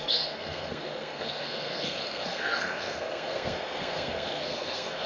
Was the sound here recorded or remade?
remade